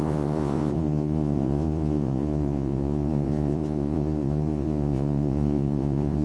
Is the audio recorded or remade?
remade